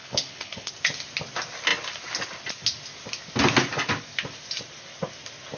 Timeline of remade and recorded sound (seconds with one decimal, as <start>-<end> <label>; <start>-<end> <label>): 0.0-0.7 remade; 0.7-5.6 recorded